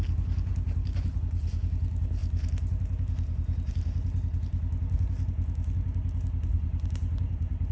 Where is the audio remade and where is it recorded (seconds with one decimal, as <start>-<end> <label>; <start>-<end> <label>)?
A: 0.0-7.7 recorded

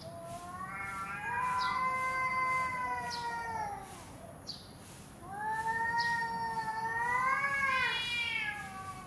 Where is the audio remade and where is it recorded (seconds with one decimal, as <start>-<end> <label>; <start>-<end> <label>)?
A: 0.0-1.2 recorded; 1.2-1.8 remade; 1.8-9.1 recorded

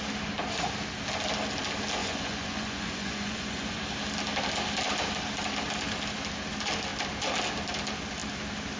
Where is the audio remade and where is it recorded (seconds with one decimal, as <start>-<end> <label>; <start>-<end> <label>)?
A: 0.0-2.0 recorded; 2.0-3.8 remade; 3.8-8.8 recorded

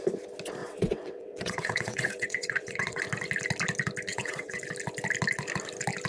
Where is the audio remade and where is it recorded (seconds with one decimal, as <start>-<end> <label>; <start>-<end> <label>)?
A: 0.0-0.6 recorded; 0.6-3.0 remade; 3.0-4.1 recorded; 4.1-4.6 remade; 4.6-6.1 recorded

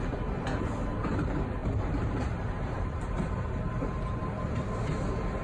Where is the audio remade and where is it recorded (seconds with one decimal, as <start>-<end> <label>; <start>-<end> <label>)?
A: 0.0-1.6 recorded; 1.6-4.2 remade; 4.2-5.4 recorded

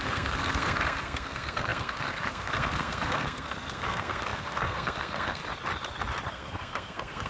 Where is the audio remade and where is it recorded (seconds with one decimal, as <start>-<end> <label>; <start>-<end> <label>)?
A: 0.0-5.4 remade; 5.4-6.3 recorded; 6.3-7.3 remade